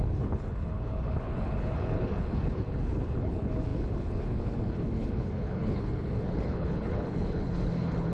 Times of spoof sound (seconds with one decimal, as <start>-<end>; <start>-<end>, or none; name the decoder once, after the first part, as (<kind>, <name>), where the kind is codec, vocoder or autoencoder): 0.0-8.1 (codec, HILCodec)